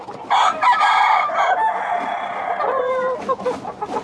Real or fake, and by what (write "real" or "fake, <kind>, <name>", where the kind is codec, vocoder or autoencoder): real